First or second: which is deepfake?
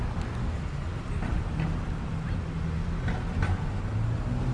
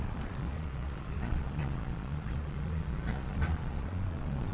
second